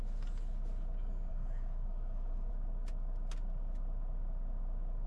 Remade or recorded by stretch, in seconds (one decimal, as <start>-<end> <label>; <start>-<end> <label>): 0.0-1.3 recorded; 1.3-2.5 remade; 2.5-5.1 recorded

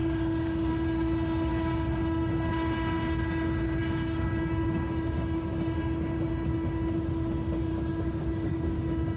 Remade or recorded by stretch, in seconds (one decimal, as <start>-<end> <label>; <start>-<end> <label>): 0.0-0.7 remade; 0.7-1.5 recorded; 1.5-2.5 remade; 2.5-3.8 recorded; 3.8-5.8 remade; 5.8-7.7 recorded; 7.7-9.2 remade

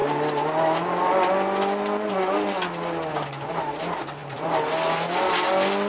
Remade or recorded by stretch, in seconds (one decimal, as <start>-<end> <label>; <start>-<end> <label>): 0.0-5.9 recorded

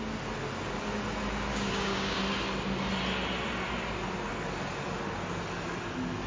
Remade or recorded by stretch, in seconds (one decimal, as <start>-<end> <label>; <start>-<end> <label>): 0.0-1.5 recorded; 1.5-2.2 remade; 2.2-6.3 recorded

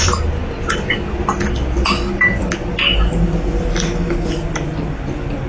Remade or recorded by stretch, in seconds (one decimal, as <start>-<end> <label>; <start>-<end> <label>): 0.0-5.5 recorded

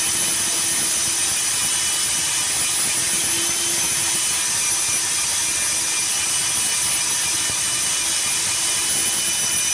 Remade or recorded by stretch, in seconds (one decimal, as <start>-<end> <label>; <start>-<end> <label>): 0.0-9.7 recorded